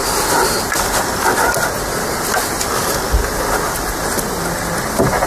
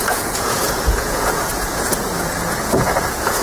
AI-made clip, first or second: second